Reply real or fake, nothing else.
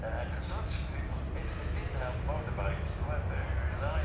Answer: real